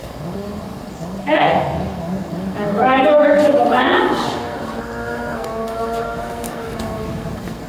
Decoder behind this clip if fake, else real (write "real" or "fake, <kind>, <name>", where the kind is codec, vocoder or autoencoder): fake, codec, SNAC